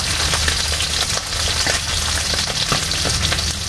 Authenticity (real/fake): real